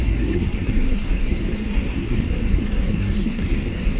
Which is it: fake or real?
fake